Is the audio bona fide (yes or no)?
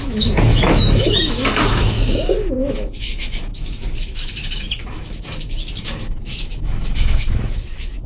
no